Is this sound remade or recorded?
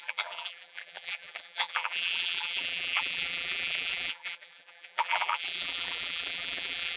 remade